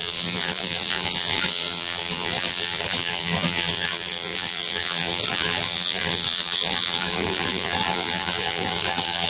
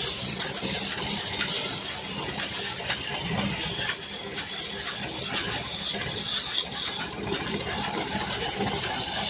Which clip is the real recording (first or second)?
second